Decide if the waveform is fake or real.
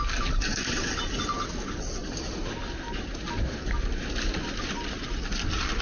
real